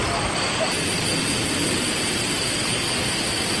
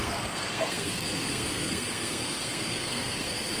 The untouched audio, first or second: first